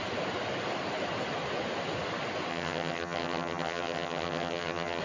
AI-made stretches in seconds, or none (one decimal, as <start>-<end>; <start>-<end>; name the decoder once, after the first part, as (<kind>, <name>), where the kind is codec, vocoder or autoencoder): 2.5-5.0 (vocoder, HiFi-GAN)